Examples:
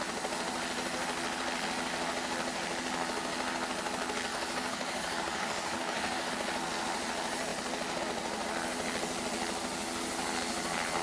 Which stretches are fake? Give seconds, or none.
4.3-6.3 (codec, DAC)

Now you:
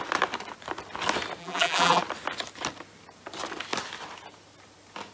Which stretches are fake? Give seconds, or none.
1.4-2.0 (vocoder, BigVGAN v2)

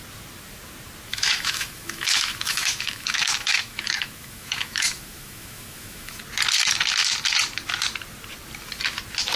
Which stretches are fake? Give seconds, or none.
1.1-6.2 (autoencoder, DAC-VAE)